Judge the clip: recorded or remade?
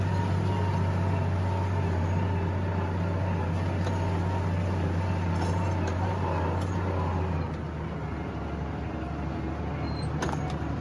recorded